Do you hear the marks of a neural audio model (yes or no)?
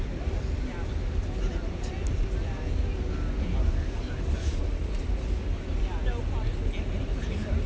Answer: no